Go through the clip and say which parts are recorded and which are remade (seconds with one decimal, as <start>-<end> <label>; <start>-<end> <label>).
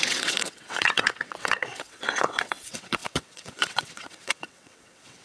0.0-5.2 remade